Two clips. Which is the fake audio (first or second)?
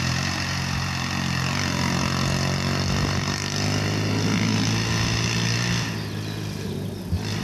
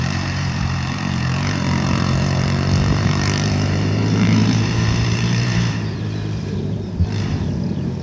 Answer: second